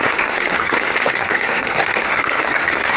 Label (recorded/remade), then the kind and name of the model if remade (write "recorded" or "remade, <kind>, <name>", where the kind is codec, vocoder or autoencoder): remade, codec, SNAC